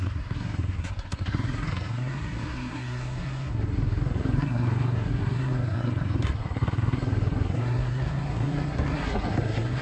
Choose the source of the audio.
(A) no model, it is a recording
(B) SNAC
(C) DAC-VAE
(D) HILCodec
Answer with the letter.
B